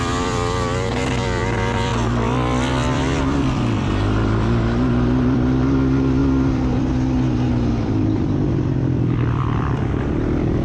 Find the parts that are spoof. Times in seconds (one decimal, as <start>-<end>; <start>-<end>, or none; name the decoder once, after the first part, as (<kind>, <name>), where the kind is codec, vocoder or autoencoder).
0.0-1.9 (vocoder, BigVGAN v2); 2.7-10.6